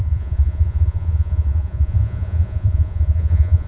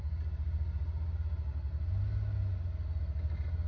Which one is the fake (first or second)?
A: first